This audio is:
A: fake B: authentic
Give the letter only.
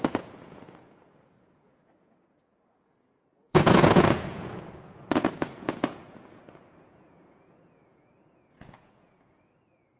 A